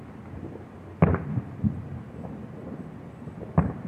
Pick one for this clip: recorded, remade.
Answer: recorded